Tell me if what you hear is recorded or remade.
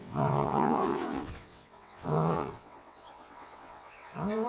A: remade